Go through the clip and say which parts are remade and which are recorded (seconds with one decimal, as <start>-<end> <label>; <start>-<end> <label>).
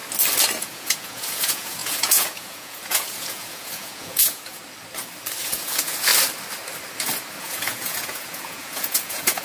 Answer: 0.0-0.6 recorded; 0.6-4.6 remade; 4.6-5.4 recorded; 5.4-6.1 remade; 6.1-7.4 recorded; 7.4-9.4 remade